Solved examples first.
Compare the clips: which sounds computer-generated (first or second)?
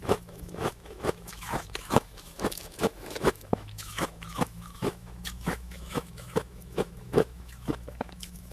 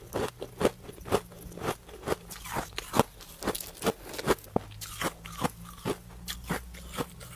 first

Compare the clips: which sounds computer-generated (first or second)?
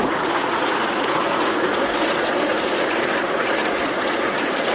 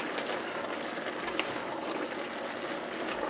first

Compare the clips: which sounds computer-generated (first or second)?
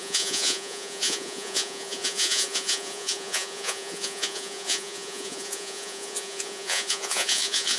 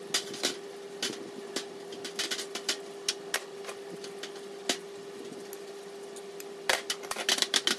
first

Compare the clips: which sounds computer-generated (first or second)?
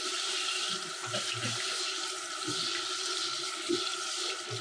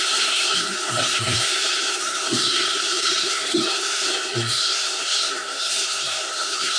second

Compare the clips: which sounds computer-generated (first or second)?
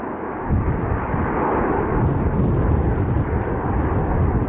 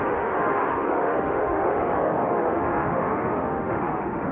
second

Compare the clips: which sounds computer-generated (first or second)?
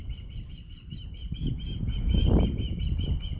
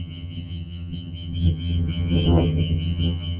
second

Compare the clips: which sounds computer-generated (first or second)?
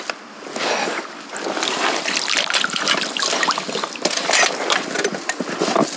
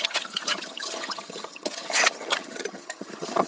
second